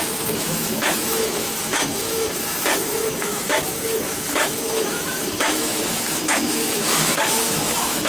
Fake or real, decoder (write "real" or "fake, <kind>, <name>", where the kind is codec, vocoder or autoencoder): fake, autoencoder, DAC-VAE